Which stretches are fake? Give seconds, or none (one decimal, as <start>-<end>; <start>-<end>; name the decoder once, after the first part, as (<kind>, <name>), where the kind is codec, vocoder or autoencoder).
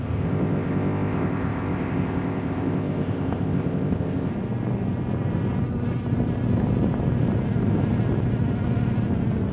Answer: 0.0-4.3 (codec, ZipCodec)